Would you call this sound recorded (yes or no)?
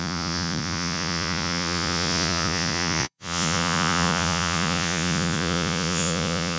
no